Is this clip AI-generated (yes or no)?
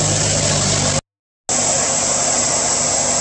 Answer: no